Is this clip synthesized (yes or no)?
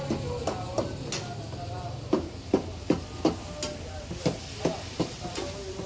no